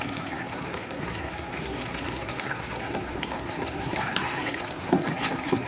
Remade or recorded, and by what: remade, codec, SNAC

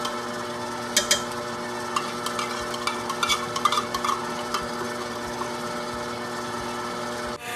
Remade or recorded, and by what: recorded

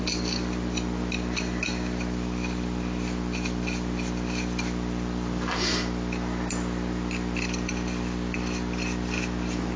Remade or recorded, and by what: recorded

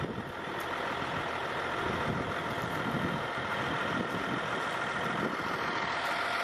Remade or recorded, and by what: recorded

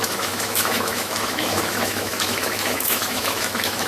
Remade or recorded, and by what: remade, autoencoder, DAC-VAE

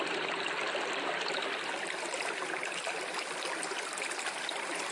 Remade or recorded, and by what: recorded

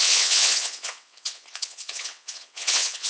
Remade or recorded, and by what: remade, vocoder, WaveNeXt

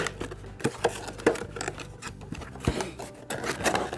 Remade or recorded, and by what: recorded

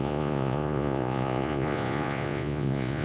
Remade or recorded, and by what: remade, vocoder, Vocos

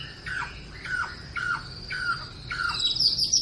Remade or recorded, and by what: recorded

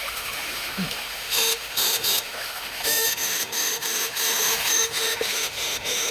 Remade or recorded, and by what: remade, autoencoder, DAC-VAE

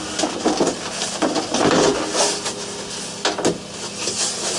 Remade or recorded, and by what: recorded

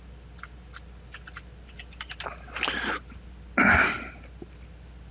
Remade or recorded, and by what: recorded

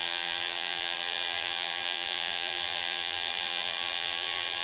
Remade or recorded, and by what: remade, vocoder, BigVGAN v2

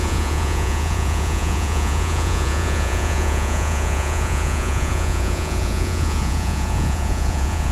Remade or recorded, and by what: remade, vocoder, Vocos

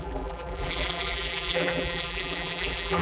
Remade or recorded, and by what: remade, vocoder, BigVGAN v2